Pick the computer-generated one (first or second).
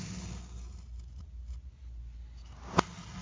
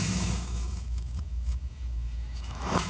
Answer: second